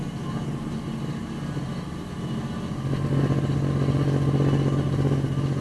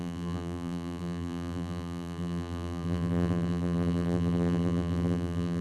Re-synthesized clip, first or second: second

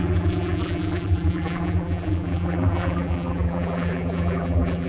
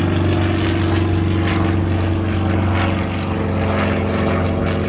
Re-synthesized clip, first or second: first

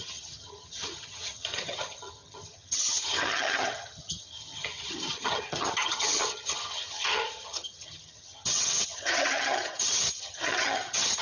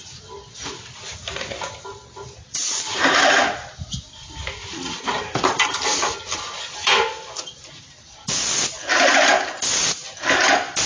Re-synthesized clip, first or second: first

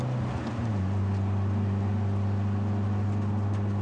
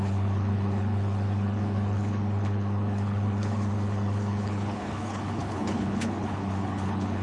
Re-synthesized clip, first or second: second